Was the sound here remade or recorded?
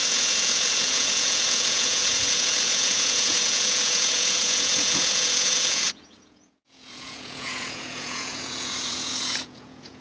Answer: remade